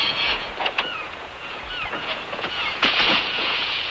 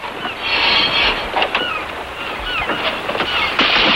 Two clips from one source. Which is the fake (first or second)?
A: first